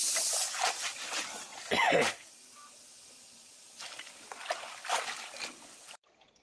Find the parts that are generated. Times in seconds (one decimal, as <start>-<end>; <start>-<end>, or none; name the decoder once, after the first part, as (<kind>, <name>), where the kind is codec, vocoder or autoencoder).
none